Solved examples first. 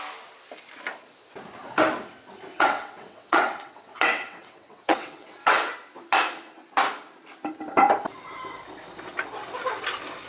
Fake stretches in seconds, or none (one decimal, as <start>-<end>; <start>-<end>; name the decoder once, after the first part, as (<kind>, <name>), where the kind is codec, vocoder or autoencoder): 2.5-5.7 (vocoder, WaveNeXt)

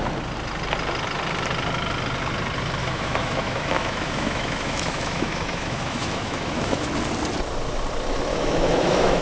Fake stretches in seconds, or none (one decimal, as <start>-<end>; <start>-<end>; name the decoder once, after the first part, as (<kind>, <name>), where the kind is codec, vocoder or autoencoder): 2.8-6.9 (autoencoder, DAC-VAE); 8.3-9.2

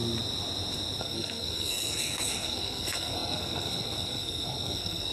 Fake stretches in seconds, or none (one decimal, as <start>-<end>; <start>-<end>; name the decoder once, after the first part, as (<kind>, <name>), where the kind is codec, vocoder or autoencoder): 1.0-5.1 (codec, SNAC)

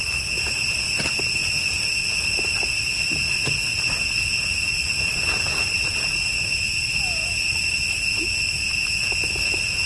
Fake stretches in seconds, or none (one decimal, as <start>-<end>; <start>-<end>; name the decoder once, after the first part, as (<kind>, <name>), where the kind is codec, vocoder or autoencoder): none